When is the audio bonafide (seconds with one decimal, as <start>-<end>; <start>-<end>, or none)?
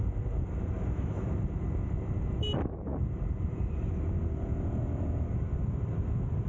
0.0-6.5